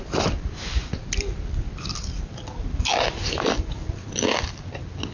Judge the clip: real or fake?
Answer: real